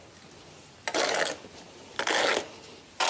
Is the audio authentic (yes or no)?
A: yes